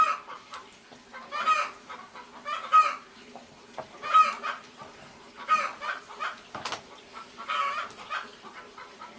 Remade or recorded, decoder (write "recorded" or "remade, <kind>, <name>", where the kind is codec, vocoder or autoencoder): recorded